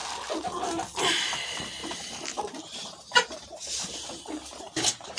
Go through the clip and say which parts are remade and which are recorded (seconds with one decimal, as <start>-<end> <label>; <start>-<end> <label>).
0.0-1.8 recorded; 1.8-5.2 remade